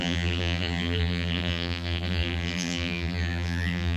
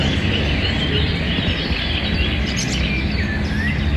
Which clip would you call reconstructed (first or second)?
first